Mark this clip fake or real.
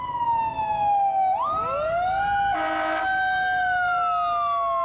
real